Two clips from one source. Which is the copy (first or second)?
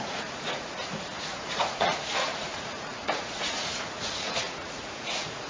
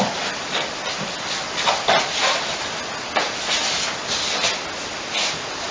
first